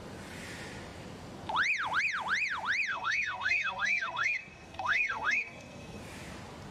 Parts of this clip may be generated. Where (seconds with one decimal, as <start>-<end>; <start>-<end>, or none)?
2.9-6.0